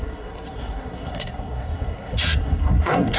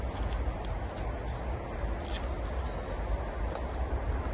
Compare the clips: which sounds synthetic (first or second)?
first